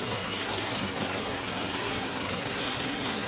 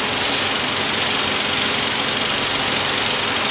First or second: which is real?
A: second